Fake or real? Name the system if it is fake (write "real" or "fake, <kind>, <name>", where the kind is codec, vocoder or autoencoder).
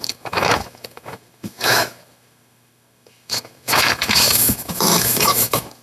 fake, autoencoder, DAC-VAE